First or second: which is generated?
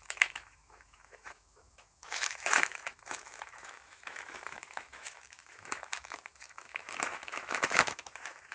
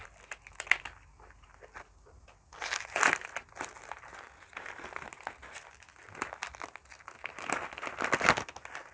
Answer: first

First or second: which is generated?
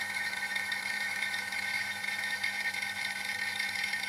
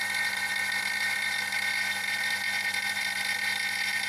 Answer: first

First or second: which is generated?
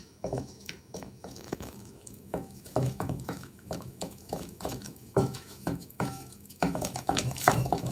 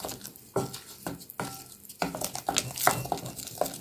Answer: first